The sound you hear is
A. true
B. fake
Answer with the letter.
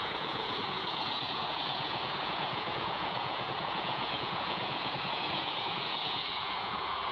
B